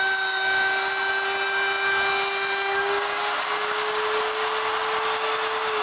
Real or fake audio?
real